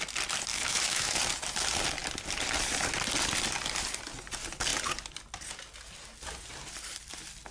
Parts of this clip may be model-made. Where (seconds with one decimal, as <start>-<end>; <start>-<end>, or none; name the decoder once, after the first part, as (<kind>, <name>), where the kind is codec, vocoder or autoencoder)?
0.5-1.2 (autoencoder, DAC-VAE)